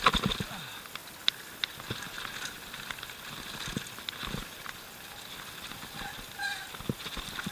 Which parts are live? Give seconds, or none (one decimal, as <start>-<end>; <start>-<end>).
0.0-7.5